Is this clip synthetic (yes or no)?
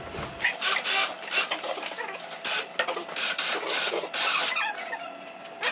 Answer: no